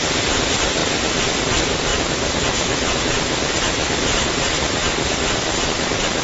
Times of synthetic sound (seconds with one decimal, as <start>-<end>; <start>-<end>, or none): 0.0-0.8; 1.4-1.9; 5.6-6.2